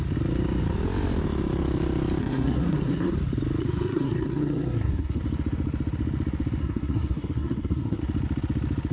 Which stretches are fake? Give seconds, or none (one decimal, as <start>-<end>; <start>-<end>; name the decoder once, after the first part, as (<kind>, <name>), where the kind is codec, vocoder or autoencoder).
2.2-3.1 (codec, SNAC); 3.6-5.2; 6.6-8.0